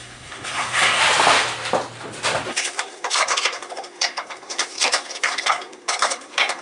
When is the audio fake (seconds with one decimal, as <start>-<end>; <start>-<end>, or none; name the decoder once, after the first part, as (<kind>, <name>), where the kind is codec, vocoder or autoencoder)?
0.0-1.0 (codec, SNAC); 2.5-6.6